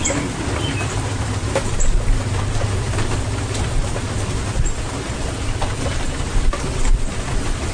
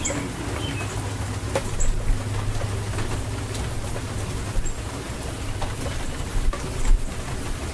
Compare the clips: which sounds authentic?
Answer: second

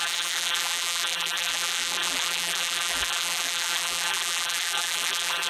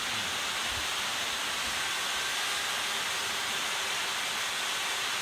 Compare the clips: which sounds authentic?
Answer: second